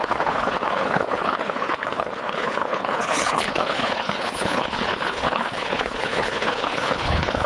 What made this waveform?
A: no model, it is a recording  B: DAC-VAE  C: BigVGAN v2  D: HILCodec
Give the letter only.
D